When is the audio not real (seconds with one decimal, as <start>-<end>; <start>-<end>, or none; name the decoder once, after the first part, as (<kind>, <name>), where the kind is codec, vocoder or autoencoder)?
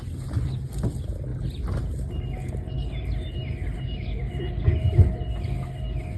none